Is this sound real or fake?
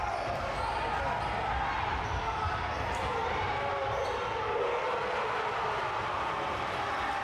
real